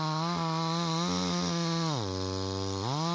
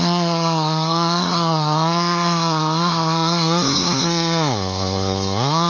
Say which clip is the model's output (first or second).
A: second